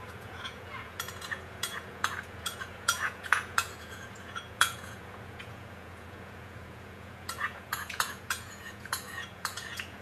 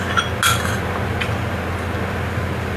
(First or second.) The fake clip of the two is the first